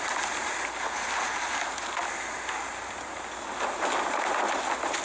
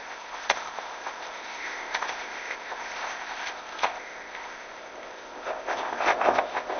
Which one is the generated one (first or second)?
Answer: second